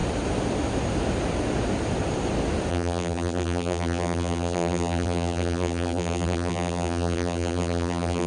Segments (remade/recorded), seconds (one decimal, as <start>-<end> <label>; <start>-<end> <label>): 0.0-2.7 recorded; 2.7-8.3 remade